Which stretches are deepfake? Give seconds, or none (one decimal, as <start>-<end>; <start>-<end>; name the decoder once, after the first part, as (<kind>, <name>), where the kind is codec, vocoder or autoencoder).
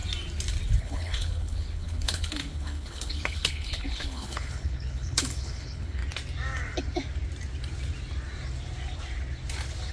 0.8-6.0 (codec, HILCodec)